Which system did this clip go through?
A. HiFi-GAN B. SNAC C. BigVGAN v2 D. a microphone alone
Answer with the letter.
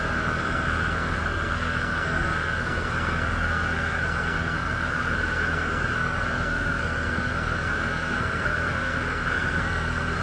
B